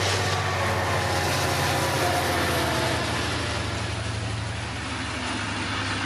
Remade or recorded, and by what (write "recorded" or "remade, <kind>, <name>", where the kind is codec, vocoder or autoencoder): recorded